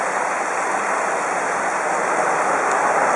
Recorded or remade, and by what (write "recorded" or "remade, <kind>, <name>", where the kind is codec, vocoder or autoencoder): recorded